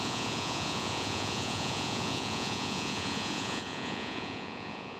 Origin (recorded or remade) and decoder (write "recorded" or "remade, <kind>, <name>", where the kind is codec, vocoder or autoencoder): remade, vocoder, Vocos